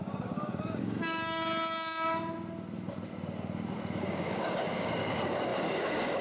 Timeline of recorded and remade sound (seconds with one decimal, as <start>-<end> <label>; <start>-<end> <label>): 0.0-1.4 remade; 1.4-4.0 recorded; 4.0-6.2 remade

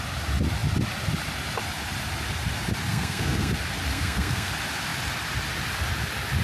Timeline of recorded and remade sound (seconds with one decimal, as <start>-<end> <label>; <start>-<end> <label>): 0.0-2.9 recorded; 2.9-3.5 remade; 3.5-3.9 recorded; 3.9-4.5 remade; 4.5-6.4 recorded

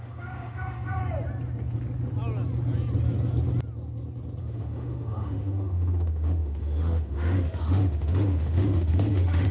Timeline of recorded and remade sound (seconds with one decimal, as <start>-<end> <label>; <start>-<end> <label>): 0.0-1.0 remade; 1.0-4.4 recorded; 4.4-9.5 remade

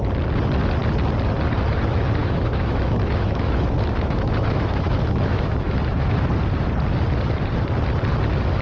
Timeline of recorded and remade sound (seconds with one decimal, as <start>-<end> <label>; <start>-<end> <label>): 0.0-2.2 recorded; 2.2-6.1 remade; 6.1-8.6 recorded

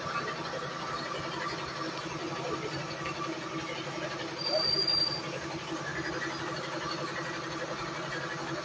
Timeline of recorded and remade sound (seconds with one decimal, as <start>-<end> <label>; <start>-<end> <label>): 0.0-8.6 recorded

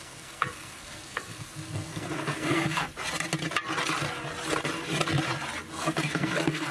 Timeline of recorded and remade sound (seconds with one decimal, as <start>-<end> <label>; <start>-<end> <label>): 0.0-2.9 remade; 2.9-5.7 recorded; 5.7-6.7 remade

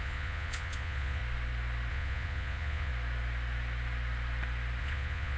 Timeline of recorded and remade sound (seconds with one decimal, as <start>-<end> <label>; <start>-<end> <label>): 0.0-1.2 remade; 1.2-1.9 recorded; 1.9-2.9 remade; 2.9-4.8 recorded; 4.8-5.4 remade